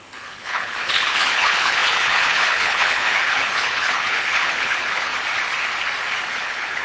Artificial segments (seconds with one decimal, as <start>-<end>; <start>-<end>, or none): 0.0-5.1; 6.3-6.8